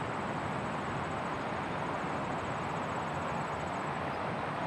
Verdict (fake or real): real